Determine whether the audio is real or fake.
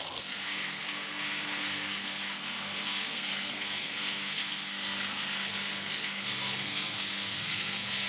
fake